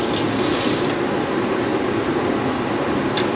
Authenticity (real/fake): real